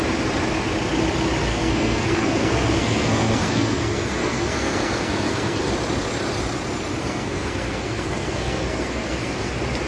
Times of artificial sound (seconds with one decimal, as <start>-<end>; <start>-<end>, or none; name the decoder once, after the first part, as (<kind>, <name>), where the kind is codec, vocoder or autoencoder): 1.5-5.7 (codec, SNAC); 7.0-9.5